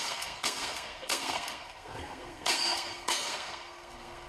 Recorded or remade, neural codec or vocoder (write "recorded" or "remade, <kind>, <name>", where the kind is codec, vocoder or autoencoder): remade, codec, SNAC